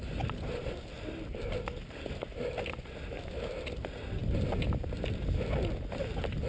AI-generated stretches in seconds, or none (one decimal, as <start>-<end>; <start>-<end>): none